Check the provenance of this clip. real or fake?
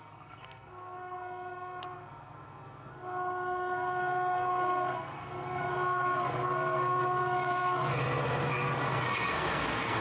fake